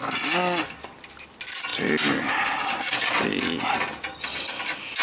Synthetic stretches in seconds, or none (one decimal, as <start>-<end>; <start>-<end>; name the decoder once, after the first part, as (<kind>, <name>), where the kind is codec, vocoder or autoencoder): none